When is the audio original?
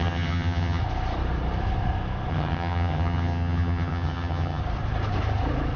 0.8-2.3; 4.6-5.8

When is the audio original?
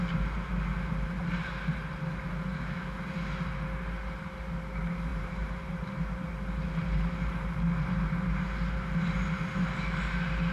0.0-5.1; 6.3-10.5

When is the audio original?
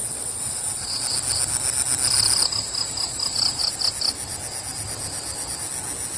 1.0-6.2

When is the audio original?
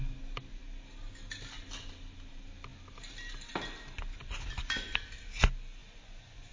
0.0-5.8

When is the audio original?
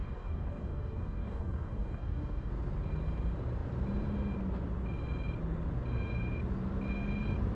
2.5-7.5